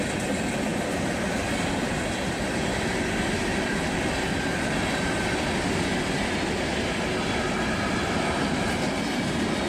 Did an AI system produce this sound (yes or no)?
no